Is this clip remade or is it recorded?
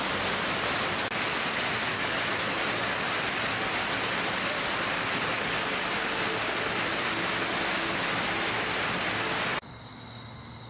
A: recorded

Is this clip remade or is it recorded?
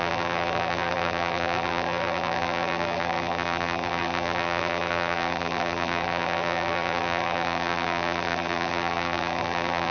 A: remade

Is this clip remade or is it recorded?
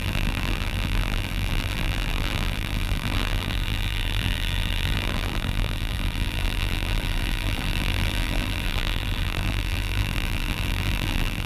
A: remade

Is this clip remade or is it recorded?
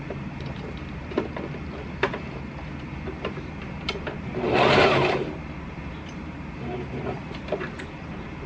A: remade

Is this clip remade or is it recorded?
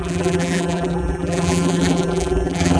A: remade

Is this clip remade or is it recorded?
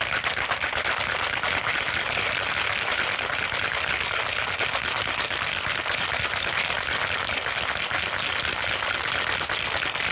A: remade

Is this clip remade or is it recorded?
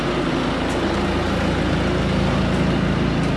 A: recorded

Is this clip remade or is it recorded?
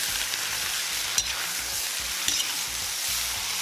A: recorded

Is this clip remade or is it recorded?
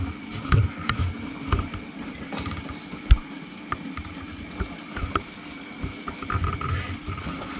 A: recorded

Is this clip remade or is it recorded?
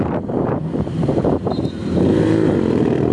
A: remade